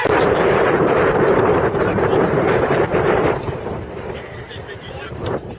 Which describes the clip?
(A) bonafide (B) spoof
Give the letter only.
B